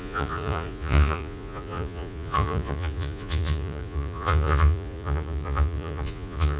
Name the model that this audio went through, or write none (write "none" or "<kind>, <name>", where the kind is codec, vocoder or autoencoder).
vocoder, Vocos